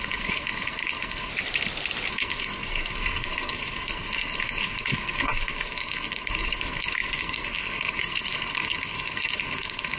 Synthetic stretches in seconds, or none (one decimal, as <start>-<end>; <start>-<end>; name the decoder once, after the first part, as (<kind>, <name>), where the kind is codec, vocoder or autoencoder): 0.0-1.3 (codec, SNAC); 2.1-10.0